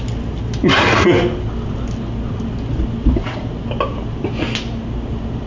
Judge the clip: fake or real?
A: real